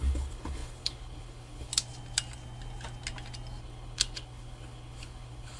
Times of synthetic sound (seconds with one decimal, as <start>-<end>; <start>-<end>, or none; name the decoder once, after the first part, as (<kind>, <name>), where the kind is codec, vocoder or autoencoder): 0.0-1.7 (codec, HILCodec); 3.6-5.6